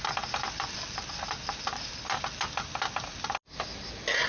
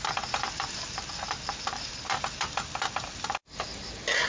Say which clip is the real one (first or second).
first